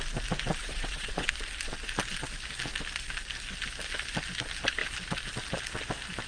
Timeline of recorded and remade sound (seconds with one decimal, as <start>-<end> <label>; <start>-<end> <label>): 0.0-0.6 recorded; 0.6-1.3 remade; 1.3-6.3 recorded